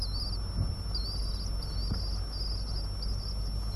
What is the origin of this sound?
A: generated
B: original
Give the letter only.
B